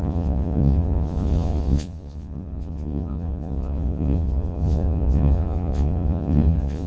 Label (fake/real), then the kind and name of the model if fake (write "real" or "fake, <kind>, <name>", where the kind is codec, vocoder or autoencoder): fake, vocoder, Vocos